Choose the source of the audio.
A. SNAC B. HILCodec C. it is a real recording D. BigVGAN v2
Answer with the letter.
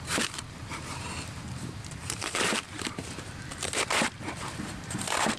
D